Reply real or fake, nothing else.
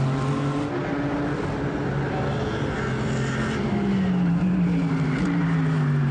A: real